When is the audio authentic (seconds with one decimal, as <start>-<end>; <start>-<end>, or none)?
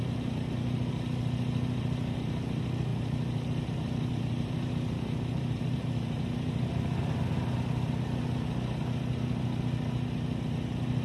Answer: 0.0-2.9; 6.8-11.0